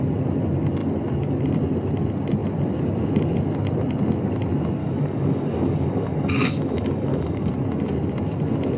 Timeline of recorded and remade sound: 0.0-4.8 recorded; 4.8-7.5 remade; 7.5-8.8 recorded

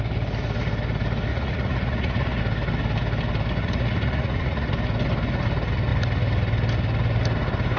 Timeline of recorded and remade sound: 0.0-1.3 recorded; 1.3-2.4 remade; 2.4-3.6 recorded; 3.6-4.7 remade; 4.7-7.8 recorded

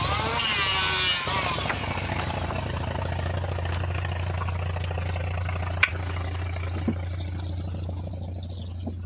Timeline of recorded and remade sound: 0.0-9.1 recorded

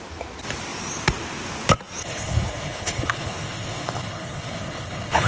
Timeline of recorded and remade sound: 0.0-2.0 recorded; 2.0-5.3 remade